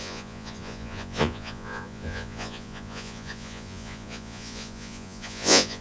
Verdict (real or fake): fake